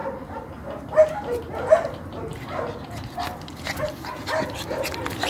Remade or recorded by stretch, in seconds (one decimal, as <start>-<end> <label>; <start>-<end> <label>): 0.0-5.3 recorded